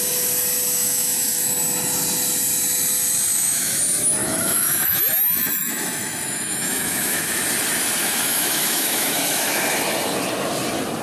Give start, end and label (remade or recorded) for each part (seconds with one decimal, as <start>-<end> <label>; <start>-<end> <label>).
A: 0.0-0.8 recorded; 0.8-1.5 remade; 1.5-3.3 recorded; 3.3-3.8 remade; 3.8-4.2 recorded; 4.2-7.4 remade; 7.4-8.0 recorded; 8.0-9.6 remade; 9.6-11.0 recorded